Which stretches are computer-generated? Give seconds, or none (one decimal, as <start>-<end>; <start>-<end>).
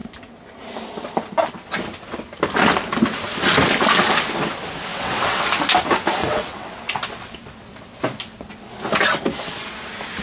4.9-5.4; 6.2-6.7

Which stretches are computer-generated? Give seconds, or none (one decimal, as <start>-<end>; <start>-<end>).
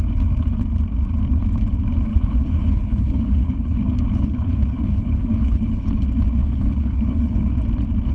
2.1-5.9; 6.4-7.5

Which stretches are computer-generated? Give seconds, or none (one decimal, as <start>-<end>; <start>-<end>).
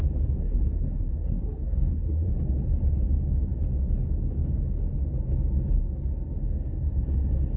0.4-2.3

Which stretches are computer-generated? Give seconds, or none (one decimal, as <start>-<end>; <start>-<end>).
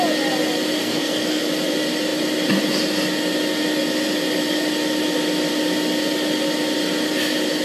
0.8-1.4